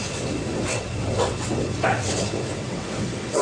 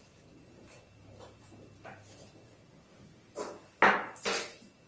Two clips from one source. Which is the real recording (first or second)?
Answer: second